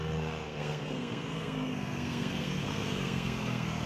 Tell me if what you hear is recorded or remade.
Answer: remade